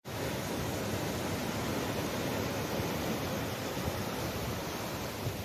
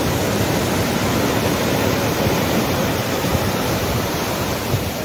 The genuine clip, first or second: first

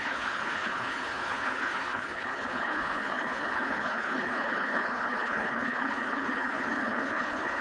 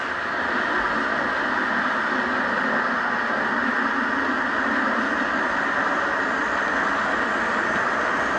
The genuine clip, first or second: second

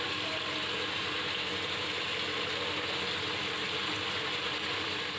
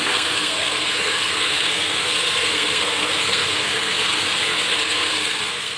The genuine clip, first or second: first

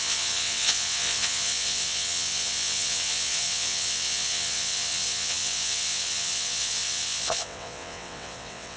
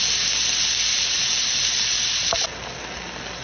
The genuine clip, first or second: second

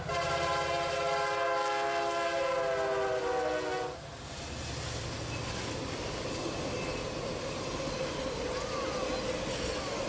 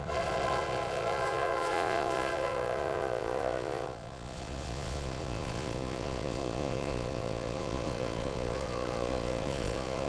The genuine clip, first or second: first